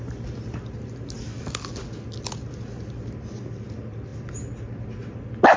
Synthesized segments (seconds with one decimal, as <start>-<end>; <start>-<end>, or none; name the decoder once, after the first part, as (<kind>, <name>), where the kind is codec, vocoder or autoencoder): none